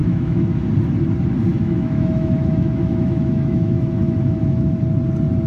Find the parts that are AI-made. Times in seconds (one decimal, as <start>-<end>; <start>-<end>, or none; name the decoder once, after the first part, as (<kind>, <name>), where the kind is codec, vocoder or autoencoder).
0.0-0.6 (autoencoder, DAC-VAE); 1.5-4.8